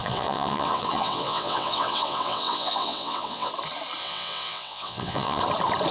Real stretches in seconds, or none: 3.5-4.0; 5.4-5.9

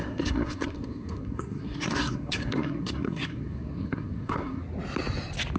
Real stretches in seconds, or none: 4.6-5.6

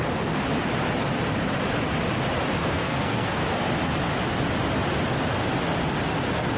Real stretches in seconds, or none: 0.0-2.6; 3.4-6.6

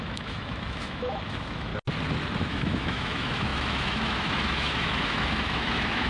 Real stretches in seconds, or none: 1.7-2.4

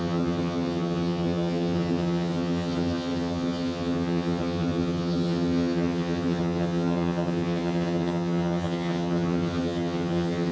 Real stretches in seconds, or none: none

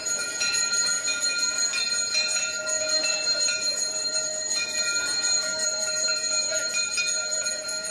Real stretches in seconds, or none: 0.9-1.8

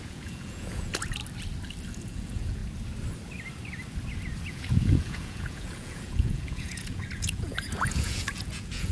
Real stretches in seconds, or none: 1.2-1.9; 2.6-4.5

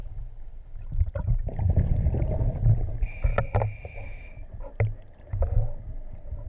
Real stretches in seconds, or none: 0.0-6.5